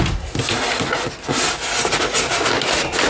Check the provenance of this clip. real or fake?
real